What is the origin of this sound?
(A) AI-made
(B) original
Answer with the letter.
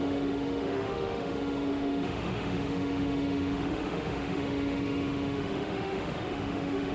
A